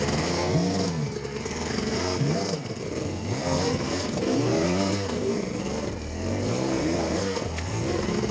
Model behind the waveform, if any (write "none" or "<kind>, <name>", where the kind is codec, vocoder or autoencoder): codec, SNAC